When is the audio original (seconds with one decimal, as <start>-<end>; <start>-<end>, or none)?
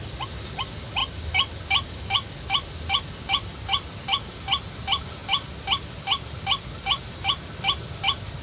0.0-8.4